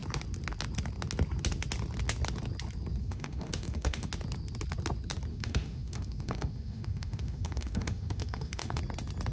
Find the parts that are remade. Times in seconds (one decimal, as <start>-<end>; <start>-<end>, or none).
3.0-4.1; 5.3-8.8